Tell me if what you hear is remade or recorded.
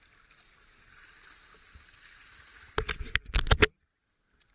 recorded